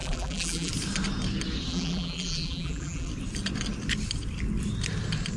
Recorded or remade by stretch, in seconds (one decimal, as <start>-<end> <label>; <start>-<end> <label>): 0.0-0.7 remade; 0.7-1.7 recorded; 1.7-3.1 remade; 3.1-5.4 recorded